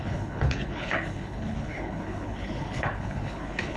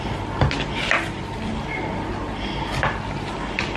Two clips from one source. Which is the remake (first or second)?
first